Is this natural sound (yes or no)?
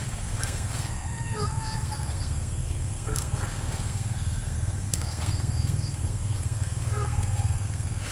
no